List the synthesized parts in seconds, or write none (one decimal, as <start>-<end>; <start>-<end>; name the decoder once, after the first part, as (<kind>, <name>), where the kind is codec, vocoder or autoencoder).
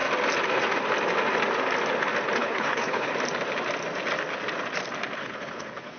2.4-3.1 (codec, HILCodec); 5.2-6.0